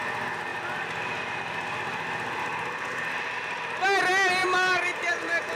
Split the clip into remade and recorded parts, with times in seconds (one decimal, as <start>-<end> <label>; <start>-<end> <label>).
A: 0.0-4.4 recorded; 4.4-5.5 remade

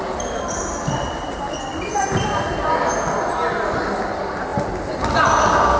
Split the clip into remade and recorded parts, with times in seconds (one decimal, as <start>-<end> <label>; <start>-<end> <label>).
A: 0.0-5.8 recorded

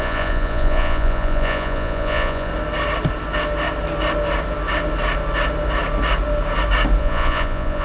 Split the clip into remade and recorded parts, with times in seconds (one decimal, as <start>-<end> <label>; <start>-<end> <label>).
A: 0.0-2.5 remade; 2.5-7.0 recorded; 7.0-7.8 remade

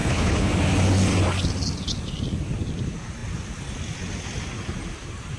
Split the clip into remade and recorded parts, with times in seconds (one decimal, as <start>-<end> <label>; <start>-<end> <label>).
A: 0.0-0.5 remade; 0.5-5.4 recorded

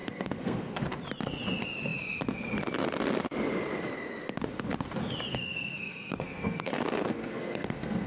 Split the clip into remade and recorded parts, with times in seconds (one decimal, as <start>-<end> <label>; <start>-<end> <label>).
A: 0.0-0.9 remade; 0.9-5.3 recorded; 5.3-8.1 remade